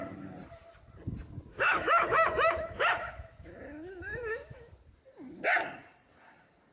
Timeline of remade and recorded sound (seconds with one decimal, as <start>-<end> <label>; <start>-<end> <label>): 0.0-1.5 recorded; 1.5-4.7 remade; 4.7-6.7 recorded